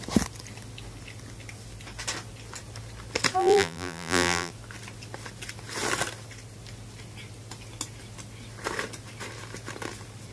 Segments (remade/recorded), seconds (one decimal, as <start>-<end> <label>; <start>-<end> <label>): 0.0-3.4 recorded; 3.4-4.5 remade; 4.5-10.3 recorded